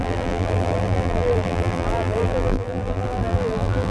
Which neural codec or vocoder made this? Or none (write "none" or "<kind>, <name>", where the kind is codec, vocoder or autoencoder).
vocoder, BigVGAN v2